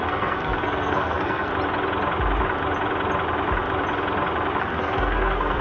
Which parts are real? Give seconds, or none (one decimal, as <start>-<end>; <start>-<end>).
1.5-4.6